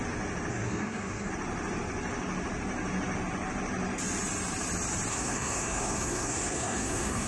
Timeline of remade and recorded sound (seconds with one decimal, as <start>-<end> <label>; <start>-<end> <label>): 0.0-0.5 recorded; 0.5-1.3 remade; 1.3-5.1 recorded; 5.1-7.3 remade